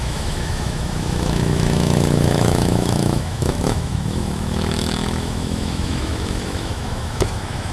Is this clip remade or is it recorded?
remade